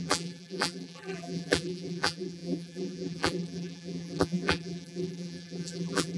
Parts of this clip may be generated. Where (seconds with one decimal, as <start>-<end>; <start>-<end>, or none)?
0.0-6.2